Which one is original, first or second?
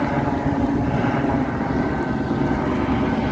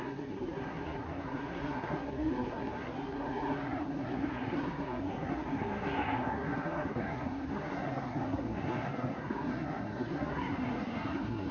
first